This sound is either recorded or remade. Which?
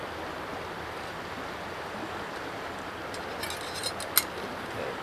recorded